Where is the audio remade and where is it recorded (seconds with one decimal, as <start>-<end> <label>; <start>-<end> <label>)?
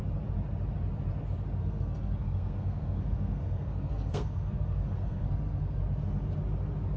0.0-1.6 recorded; 1.6-5.8 remade; 5.8-7.0 recorded